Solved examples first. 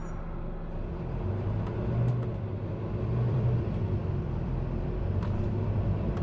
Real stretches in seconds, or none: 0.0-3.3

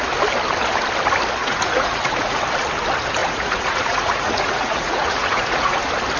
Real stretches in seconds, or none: 0.0-1.4; 2.4-3.2; 5.8-6.2

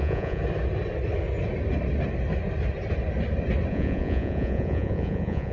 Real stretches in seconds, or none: 0.4-3.7